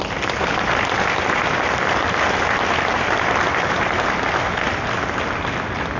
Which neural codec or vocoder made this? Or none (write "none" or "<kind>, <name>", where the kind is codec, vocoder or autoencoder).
none